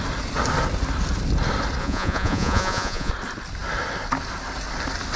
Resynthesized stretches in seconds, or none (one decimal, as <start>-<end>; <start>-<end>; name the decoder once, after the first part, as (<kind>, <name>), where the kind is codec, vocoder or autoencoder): 1.8-3.1 (vocoder, Vocos)